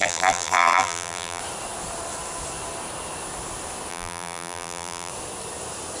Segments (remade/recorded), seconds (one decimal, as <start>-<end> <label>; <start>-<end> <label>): 0.0-1.4 remade; 1.4-3.9 recorded; 3.9-5.1 remade; 5.1-6.0 recorded